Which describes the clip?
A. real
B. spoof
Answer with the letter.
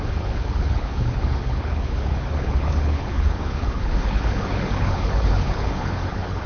B